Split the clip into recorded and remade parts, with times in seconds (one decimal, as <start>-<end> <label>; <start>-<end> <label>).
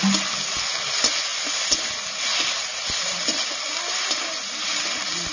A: 0.0-5.3 recorded